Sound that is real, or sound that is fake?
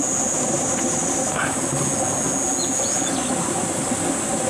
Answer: real